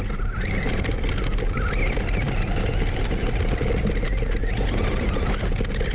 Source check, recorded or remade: recorded